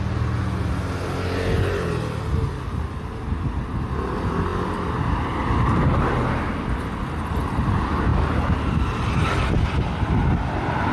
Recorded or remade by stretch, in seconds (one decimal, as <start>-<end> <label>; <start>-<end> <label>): 0.0-10.9 recorded